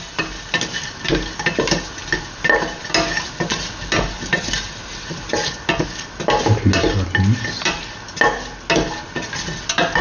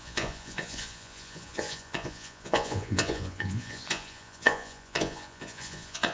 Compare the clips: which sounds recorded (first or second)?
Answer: first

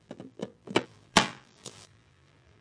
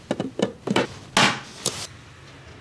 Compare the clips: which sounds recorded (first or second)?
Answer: second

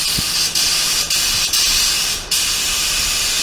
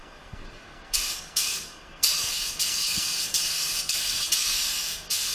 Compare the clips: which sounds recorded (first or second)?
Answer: first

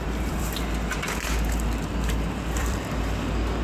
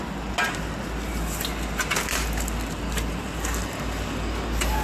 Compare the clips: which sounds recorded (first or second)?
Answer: second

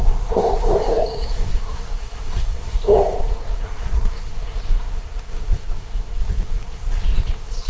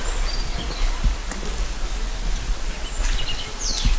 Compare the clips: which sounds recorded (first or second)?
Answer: second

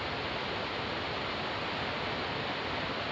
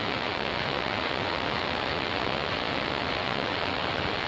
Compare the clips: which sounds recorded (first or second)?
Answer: first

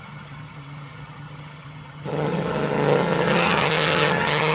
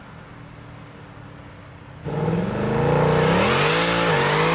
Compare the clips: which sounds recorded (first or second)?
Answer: second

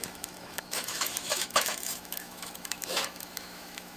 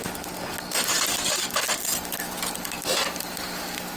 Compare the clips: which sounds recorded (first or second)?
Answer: second